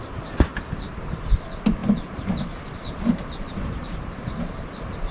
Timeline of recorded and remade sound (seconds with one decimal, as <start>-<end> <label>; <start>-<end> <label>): 0.0-0.5 recorded; 0.5-1.3 remade; 1.3-1.8 recorded; 1.8-4.6 remade; 4.6-5.1 recorded